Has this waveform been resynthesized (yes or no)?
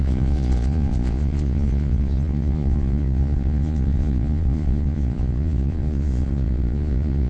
yes